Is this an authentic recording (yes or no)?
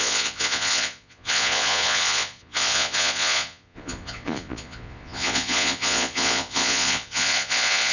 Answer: no